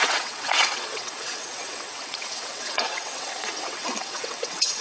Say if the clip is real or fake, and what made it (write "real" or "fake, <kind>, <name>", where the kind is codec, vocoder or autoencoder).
fake, vocoder, WaveNeXt